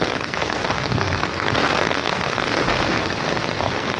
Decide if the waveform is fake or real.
fake